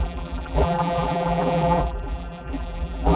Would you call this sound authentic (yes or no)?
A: no